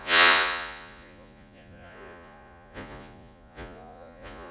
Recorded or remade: remade